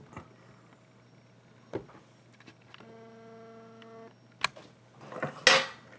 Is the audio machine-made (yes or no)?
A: no